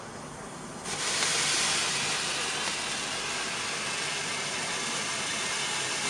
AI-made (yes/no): no